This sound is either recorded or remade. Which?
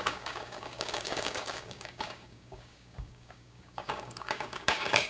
remade